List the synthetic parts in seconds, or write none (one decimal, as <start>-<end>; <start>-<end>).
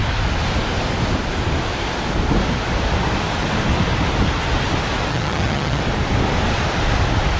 5.1-5.8